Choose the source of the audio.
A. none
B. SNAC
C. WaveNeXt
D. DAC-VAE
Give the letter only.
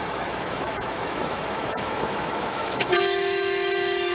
D